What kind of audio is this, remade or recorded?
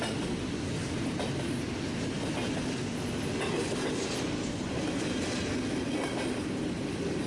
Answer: recorded